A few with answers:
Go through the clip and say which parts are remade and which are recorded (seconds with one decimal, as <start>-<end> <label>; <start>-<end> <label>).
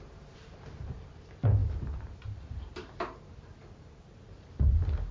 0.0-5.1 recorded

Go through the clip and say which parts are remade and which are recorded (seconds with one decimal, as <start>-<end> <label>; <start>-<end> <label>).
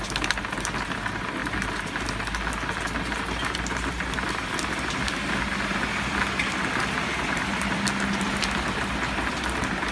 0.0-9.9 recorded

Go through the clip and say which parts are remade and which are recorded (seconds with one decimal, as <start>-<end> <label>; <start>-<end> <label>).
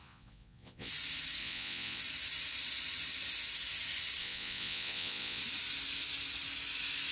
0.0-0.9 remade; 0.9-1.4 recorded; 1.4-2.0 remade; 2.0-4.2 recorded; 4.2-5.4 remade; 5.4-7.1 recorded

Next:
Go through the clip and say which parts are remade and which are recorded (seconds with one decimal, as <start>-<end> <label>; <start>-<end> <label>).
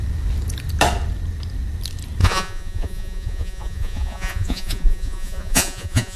0.0-2.2 recorded; 2.2-6.2 remade